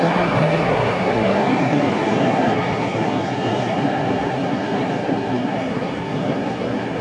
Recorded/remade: remade